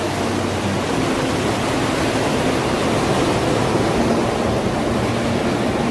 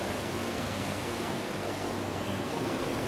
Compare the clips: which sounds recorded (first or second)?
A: first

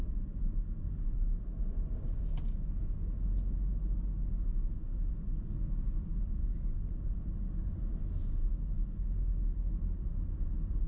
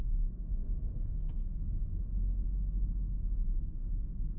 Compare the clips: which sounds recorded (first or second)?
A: first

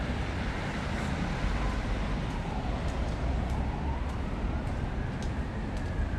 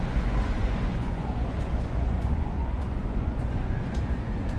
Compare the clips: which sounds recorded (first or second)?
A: first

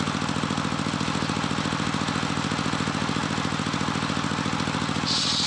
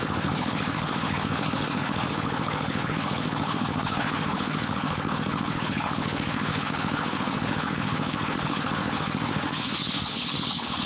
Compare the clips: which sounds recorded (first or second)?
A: first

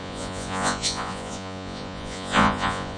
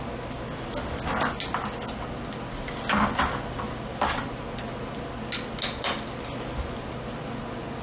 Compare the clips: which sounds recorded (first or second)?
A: second